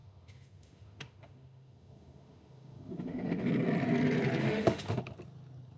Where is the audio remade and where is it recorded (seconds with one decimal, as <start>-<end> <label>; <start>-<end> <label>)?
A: 0.0-3.5 remade; 3.5-4.4 recorded; 4.4-5.0 remade; 5.0-5.8 recorded